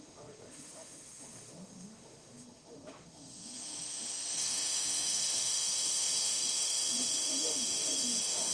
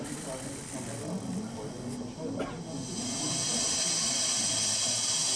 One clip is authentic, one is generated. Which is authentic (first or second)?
second